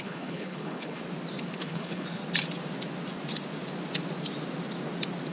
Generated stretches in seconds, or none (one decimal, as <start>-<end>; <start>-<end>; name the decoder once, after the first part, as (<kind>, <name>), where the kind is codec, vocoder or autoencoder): 0.0-1.0 (codec, HILCodec); 1.6-2.2